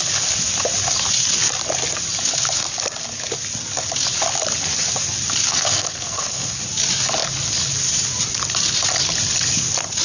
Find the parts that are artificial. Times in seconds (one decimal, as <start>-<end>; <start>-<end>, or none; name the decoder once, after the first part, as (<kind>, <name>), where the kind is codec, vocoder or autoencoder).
5.5-6.6 (codec, SNAC)